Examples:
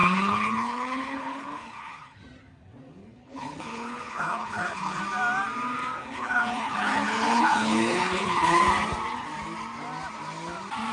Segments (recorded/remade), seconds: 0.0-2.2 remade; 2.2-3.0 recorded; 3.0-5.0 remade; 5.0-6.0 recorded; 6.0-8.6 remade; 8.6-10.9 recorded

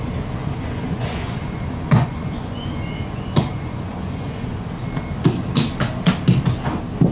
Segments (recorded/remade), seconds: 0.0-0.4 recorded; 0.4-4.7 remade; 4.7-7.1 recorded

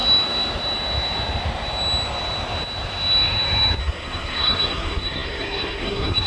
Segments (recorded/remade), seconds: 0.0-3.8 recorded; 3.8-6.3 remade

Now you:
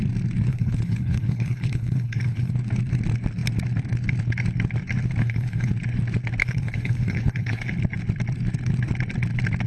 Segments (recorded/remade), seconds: 0.0-0.5 recorded; 0.5-2.5 remade; 2.5-5.2 recorded; 5.2-5.7 remade; 5.7-6.4 recorded; 6.4-7.7 remade; 7.7-9.7 recorded

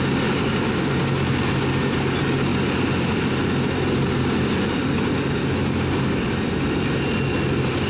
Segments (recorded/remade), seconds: 0.0-7.9 recorded